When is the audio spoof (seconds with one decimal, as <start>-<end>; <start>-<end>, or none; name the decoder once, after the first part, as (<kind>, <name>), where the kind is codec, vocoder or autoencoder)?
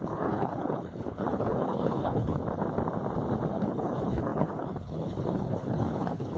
0.0-2.4 (codec, HILCodec); 3.5-6.4